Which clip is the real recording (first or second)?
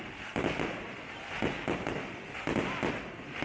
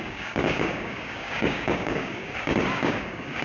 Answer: first